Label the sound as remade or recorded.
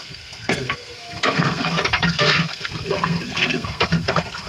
remade